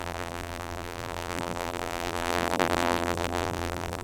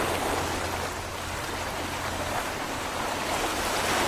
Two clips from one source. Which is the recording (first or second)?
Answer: second